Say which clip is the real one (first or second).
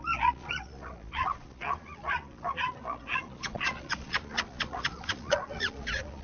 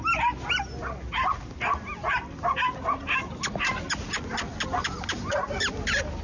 second